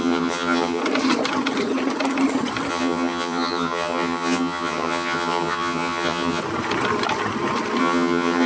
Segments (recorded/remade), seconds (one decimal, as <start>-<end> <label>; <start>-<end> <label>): 0.0-0.8 remade; 0.8-2.7 recorded; 2.7-6.4 remade; 6.4-7.8 recorded; 7.8-8.5 remade